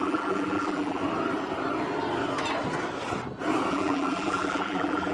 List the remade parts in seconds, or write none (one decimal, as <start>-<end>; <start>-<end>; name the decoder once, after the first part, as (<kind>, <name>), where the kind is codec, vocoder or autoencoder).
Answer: 0.0-1.0 (vocoder, BigVGAN v2); 3.7-5.1